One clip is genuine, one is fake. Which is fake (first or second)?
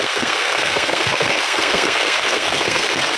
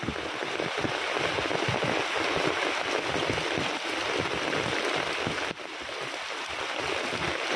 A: first